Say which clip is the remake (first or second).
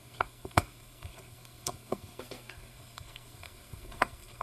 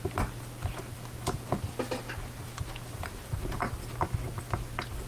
first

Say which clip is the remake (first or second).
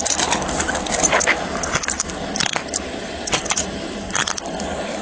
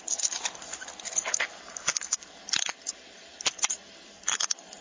first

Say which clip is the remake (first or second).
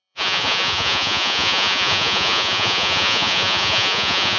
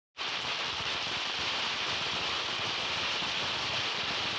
first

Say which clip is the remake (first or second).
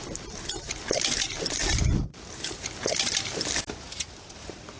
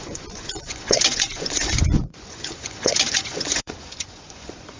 second